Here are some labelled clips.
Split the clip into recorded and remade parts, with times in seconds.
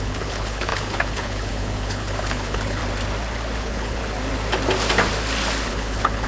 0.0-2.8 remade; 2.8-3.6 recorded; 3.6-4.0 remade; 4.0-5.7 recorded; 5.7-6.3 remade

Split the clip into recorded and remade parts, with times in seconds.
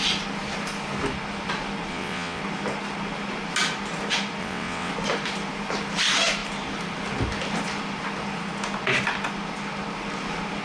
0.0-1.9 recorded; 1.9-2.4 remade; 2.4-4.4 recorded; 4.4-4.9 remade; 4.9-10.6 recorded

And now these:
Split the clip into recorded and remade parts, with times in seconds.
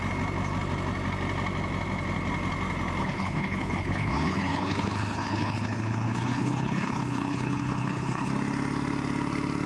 0.0-3.0 recorded; 3.0-8.3 remade; 8.3-9.7 recorded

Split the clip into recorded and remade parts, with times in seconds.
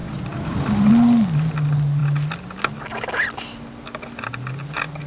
0.0-0.9 remade; 0.9-5.1 recorded